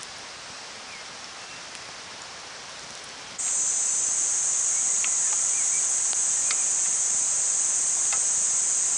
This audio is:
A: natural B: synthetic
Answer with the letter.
A